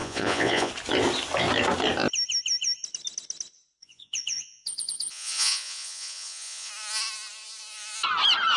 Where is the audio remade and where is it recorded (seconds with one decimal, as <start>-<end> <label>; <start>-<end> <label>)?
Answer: 0.0-0.7 remade; 0.7-3.8 recorded; 3.8-6.7 remade; 6.7-8.6 recorded